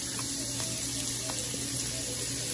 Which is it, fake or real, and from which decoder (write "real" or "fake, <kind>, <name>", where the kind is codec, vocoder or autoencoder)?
real